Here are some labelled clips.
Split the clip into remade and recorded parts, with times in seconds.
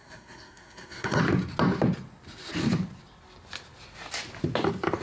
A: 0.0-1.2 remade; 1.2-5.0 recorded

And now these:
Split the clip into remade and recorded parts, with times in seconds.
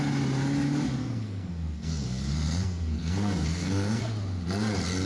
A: 0.0-1.0 recorded; 1.0-4.1 remade; 4.1-5.1 recorded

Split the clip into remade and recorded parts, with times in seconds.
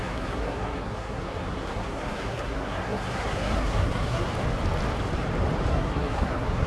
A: 0.0-4.3 remade; 4.3-5.7 recorded; 5.7-6.7 remade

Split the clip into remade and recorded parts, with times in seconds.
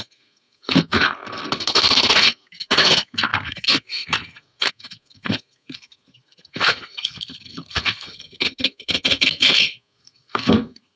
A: 0.0-11.0 remade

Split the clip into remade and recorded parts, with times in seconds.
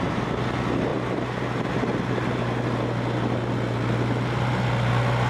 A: 0.0-5.3 recorded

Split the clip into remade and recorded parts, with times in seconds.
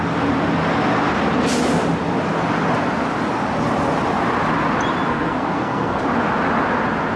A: 0.0-5.1 recorded; 5.1-6.0 remade; 6.0-7.2 recorded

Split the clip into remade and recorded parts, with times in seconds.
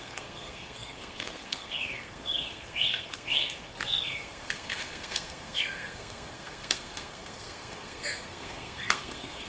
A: 0.0-9.5 remade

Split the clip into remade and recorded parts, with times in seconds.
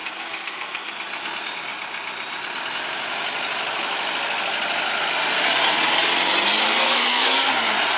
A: 0.0-0.9 remade; 0.9-6.8 recorded; 6.8-7.5 remade; 7.5-8.0 recorded